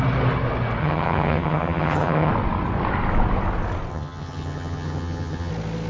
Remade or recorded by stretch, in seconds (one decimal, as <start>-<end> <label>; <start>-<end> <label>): 0.0-0.8 recorded; 0.8-2.3 remade; 2.3-3.9 recorded; 3.9-5.5 remade; 5.5-5.9 recorded